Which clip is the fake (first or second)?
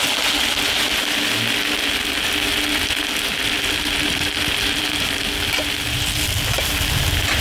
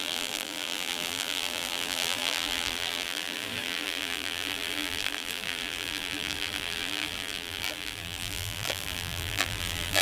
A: second